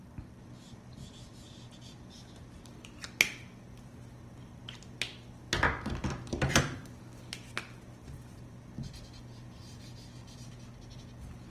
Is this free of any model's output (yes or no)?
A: yes